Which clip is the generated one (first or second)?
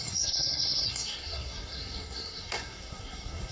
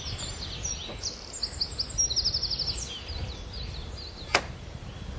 first